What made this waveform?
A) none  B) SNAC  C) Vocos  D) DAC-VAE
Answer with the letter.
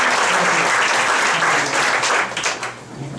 A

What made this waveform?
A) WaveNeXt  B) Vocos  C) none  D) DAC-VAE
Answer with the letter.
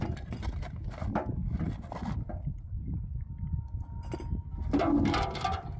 C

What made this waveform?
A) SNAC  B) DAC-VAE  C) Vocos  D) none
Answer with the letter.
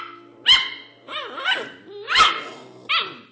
D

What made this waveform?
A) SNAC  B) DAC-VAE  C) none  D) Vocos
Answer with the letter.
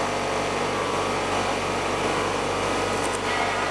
C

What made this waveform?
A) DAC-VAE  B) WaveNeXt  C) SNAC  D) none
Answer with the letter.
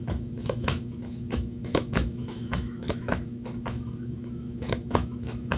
A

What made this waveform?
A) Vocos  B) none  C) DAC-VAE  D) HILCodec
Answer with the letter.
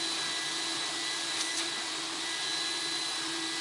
B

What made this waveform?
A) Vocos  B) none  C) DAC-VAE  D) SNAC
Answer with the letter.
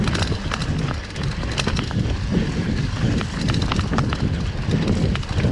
B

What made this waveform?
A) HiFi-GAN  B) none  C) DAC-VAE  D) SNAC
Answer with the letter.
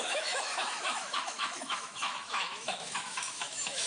C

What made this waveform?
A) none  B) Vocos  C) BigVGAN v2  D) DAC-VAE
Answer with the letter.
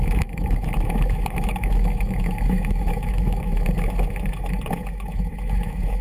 D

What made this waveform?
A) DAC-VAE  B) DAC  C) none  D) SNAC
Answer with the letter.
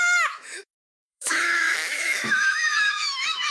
A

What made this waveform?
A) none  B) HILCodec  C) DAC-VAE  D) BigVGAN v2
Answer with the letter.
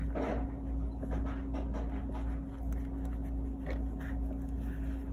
A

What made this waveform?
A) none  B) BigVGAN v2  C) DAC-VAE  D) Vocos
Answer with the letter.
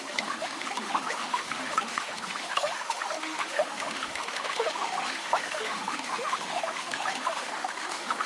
C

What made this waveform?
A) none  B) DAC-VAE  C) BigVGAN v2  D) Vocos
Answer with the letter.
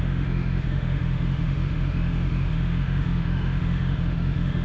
B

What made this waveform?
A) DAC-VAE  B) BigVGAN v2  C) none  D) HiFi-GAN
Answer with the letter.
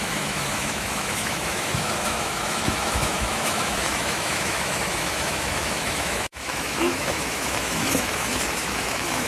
A